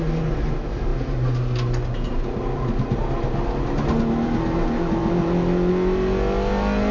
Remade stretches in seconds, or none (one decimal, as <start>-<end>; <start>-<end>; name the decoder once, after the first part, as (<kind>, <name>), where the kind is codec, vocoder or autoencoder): none